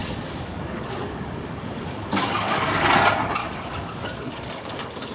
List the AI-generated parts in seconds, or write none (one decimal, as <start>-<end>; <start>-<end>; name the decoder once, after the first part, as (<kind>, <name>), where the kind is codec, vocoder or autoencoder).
0.0-2.9 (codec, DAC); 3.4-5.1